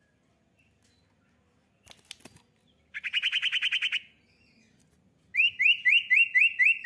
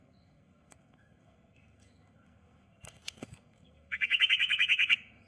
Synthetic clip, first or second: second